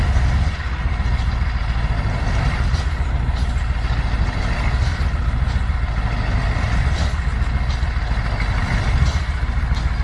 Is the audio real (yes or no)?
yes